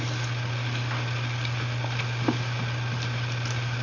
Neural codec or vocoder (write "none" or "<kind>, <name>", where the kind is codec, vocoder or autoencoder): none